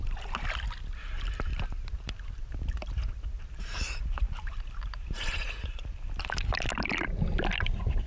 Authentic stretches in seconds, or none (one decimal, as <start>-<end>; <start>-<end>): 0.0-1.5; 6.2-8.1